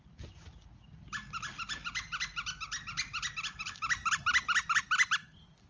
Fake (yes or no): no